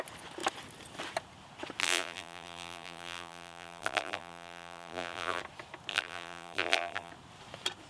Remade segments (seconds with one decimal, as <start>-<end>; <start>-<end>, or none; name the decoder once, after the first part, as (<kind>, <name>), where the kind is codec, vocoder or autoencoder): 1.8-5.4 (vocoder, BigVGAN v2); 5.9-7.1